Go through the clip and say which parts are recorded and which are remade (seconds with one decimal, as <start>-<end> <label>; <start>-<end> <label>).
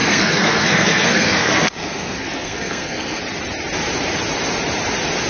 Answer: 0.0-3.2 remade; 3.2-5.3 recorded